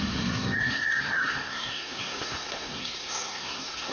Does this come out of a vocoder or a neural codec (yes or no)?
yes